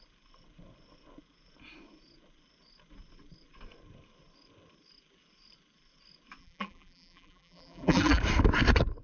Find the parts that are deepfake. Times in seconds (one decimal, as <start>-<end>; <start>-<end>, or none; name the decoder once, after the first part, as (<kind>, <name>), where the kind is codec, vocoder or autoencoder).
6.4-8.2 (vocoder, BigVGAN v2)